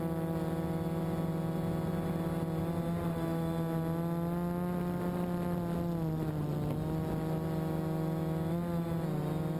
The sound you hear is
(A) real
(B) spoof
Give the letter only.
A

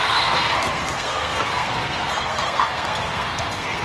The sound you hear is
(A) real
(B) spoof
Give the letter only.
B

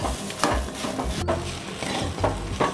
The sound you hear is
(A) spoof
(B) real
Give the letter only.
B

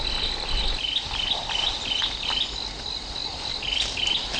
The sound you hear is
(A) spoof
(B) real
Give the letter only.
B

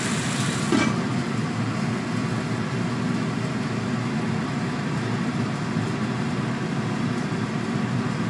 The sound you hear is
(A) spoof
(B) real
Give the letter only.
B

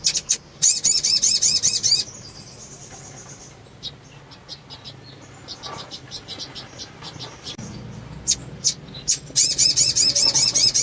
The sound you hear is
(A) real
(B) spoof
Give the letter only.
A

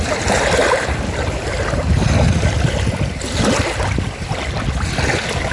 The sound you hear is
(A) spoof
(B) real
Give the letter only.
B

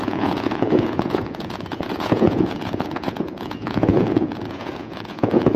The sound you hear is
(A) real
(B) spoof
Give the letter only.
B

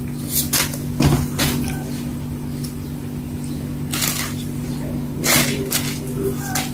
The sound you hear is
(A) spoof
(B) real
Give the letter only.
B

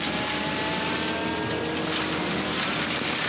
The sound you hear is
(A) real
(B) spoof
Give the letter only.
A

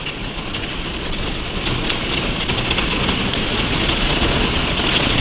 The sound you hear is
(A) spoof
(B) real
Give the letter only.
A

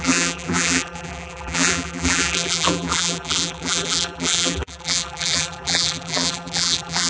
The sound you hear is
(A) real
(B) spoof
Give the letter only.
B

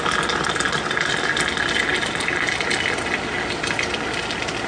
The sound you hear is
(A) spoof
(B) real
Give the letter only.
B